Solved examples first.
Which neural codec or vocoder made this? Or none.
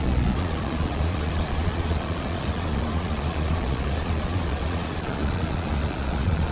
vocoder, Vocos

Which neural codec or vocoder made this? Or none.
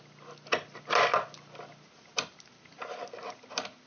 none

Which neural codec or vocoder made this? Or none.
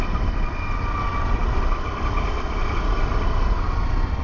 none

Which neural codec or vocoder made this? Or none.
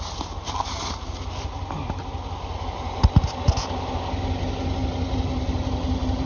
none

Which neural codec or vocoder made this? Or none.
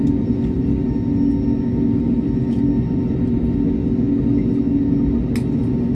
none